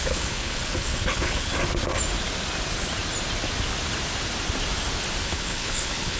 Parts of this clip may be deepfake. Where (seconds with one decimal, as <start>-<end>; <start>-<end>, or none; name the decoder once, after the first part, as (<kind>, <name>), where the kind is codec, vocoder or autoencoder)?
0.0-1.5 (codec, HILCodec); 5.2-6.2